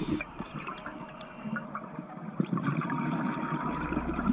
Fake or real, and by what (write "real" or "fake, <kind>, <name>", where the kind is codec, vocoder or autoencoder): fake, vocoder, BigVGAN v2